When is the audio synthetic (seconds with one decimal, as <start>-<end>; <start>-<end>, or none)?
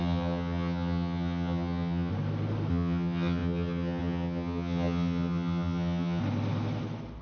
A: 0.0-2.1; 2.7-6.2